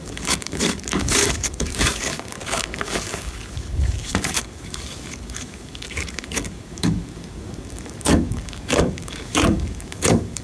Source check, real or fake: fake